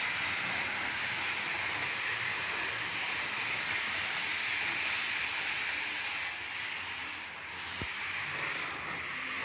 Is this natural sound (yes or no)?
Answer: yes